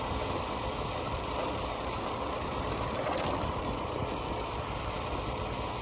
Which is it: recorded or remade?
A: recorded